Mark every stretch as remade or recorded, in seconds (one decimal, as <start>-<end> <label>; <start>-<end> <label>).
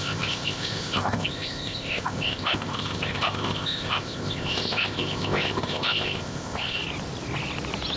0.0-6.8 remade; 6.8-8.0 recorded